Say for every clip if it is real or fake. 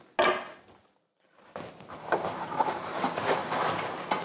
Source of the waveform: real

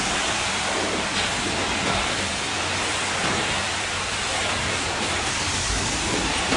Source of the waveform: fake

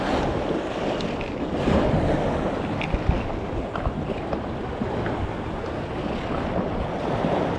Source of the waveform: real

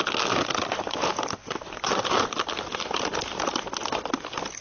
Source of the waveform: real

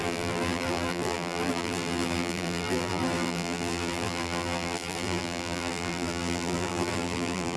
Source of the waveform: fake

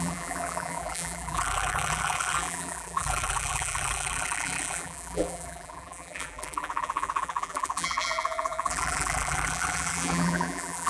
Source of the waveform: fake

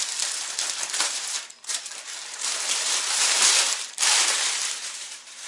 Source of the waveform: fake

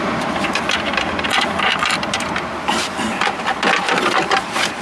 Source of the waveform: fake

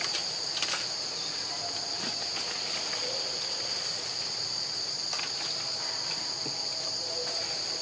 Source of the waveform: real